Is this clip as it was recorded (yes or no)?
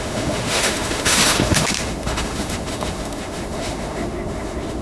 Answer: no